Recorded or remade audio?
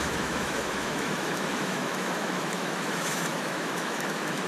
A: remade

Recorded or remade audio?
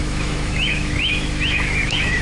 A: remade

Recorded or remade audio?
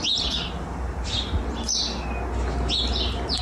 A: recorded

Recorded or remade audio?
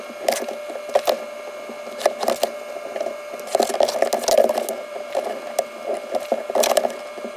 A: recorded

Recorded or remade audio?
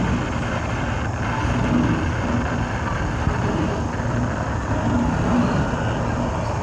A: recorded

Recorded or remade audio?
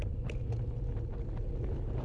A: recorded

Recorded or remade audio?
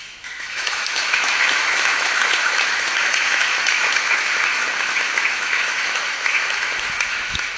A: remade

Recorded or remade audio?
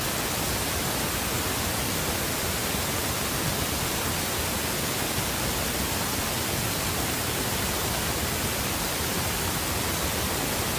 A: recorded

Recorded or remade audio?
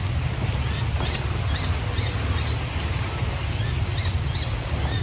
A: recorded